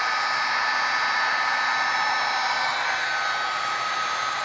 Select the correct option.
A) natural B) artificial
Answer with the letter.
A